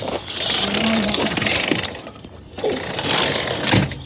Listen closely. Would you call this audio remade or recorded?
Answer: remade